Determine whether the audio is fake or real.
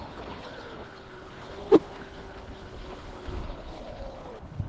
fake